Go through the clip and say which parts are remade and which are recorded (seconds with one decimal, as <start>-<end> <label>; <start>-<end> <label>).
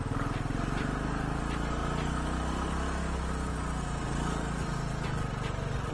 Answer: 0.0-5.9 recorded